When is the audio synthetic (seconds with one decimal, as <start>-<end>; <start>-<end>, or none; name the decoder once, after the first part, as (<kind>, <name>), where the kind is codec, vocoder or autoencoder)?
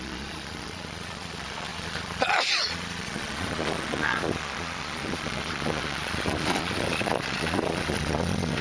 0.0-8.6 (vocoder, Vocos)